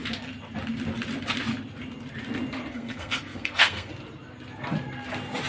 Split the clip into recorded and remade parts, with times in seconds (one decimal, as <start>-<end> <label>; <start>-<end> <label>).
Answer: 0.0-2.7 recorded; 2.7-3.9 remade; 3.9-5.5 recorded